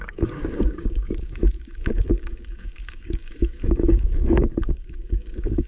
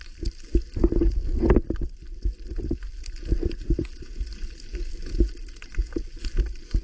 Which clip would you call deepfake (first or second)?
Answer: first